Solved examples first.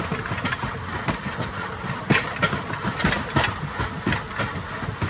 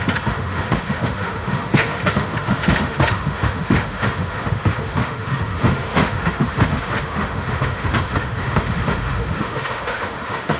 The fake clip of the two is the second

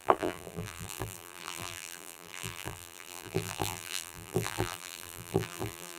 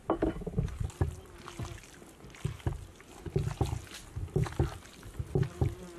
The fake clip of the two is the first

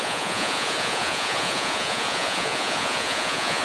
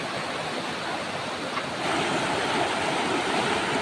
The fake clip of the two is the first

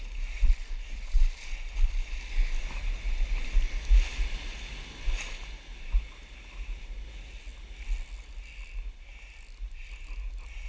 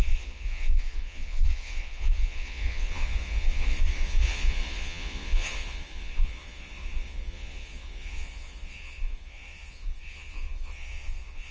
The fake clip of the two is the second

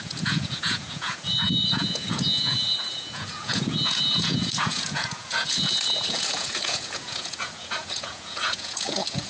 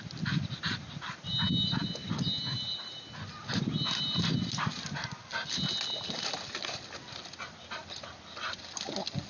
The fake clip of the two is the first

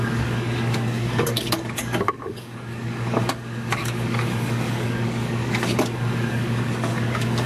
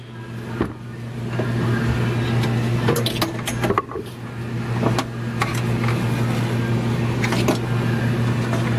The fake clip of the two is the first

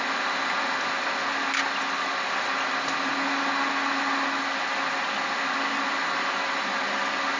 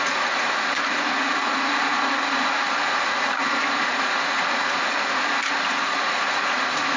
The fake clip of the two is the second